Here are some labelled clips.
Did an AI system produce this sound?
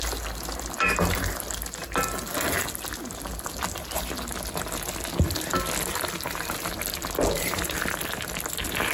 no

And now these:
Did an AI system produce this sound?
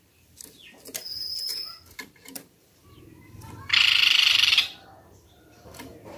yes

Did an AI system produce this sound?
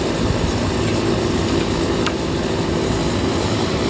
no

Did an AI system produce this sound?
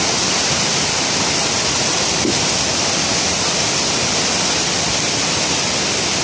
no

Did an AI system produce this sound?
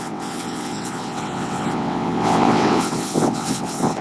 yes